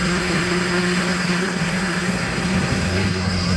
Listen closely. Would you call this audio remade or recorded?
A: remade